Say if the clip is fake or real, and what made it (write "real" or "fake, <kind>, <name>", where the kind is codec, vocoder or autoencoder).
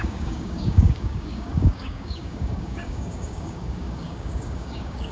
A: fake, codec, DAC